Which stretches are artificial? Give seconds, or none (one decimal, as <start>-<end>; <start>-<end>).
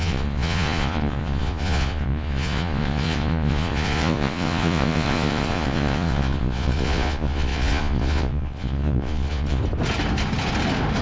0.0-9.6